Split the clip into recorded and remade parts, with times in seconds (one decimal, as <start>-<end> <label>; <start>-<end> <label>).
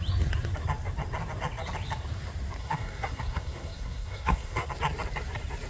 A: 0.0-2.6 recorded; 2.6-4.7 remade; 4.7-5.7 recorded